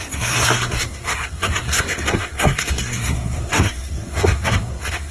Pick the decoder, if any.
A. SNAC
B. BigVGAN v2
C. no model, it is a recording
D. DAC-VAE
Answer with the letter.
A